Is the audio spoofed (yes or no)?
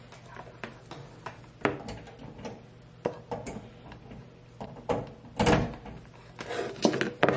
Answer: no